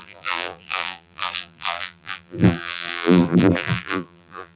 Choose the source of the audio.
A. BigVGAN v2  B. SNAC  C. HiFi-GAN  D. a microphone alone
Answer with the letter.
A